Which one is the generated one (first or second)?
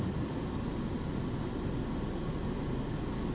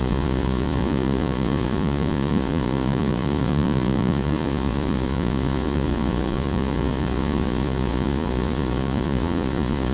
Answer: second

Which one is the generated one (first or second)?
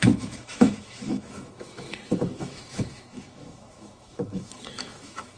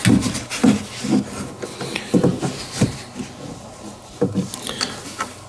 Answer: first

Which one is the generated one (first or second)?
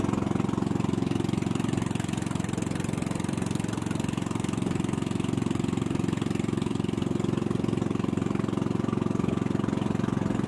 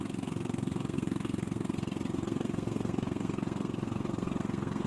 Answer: second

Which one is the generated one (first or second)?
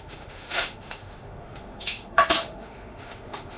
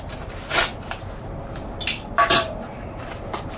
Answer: first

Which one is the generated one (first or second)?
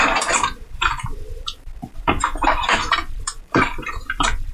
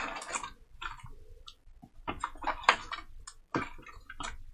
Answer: first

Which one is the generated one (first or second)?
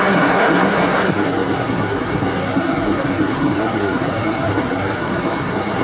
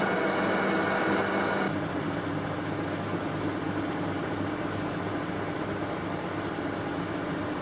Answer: first